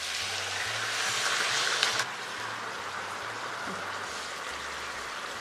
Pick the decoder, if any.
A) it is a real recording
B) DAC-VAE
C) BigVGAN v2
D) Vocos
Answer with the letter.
A